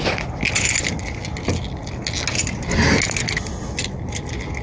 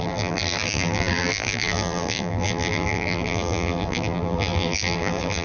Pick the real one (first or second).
first